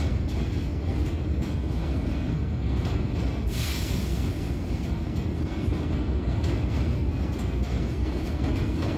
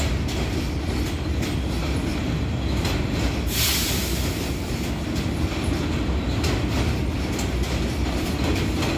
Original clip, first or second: second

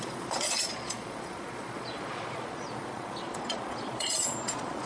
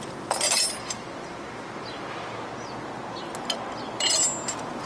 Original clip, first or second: second